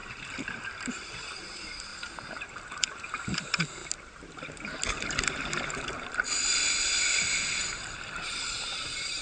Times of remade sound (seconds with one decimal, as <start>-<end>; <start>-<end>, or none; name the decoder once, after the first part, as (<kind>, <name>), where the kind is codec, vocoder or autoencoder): 0.8-1.9 (vocoder, BigVGAN v2); 2.4-3.8; 8.0-9.2